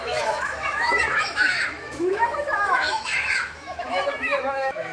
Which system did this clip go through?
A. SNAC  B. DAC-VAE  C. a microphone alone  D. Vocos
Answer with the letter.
B